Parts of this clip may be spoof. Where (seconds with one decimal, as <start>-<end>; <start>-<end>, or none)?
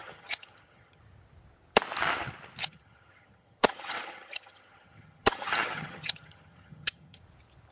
0.0-1.0; 2.6-7.2